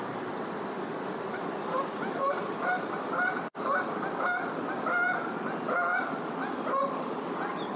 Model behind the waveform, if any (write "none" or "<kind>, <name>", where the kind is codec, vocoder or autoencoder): none